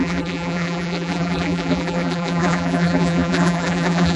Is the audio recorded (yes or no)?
no